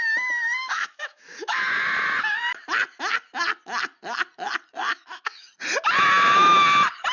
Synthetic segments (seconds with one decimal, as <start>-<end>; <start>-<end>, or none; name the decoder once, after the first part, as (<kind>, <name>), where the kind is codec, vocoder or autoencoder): 0.6-1.6 (autoencoder, DAC-VAE); 4.9-5.5